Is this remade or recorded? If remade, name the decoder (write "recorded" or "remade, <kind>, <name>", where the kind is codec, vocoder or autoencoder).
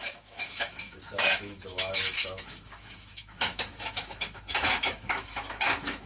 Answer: remade, autoencoder, DAC-VAE